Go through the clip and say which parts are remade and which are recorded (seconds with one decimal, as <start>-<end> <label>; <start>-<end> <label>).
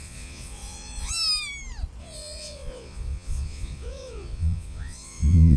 0.0-1.1 remade; 1.1-2.0 recorded; 2.0-5.6 remade